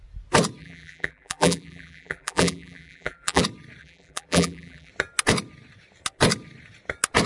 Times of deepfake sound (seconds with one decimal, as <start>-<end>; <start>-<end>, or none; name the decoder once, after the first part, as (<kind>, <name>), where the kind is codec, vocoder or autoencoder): 0.6-3.4 (vocoder, BigVGAN v2); 3.8-4.9